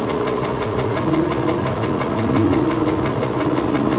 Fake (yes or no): yes